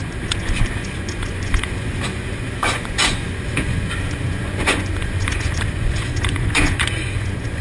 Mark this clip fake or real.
fake